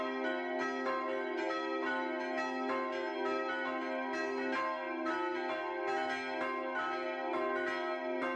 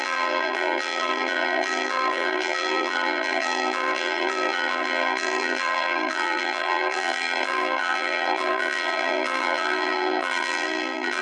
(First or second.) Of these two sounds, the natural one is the first